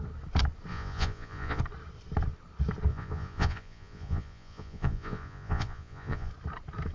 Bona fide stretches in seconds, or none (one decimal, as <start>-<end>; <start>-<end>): 0.0-0.7; 1.6-2.9; 6.3-6.9